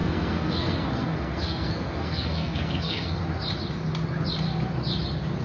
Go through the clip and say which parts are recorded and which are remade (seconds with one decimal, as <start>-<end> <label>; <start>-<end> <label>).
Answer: 0.0-3.2 remade; 3.2-5.4 recorded